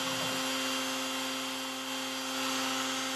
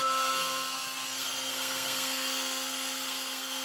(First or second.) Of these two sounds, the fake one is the second